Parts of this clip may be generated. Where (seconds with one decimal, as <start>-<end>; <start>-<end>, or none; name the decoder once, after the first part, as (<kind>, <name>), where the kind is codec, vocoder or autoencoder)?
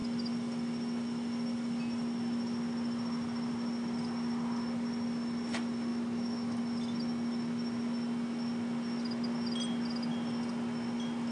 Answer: 5.9-6.6 (autoencoder, DAC-VAE)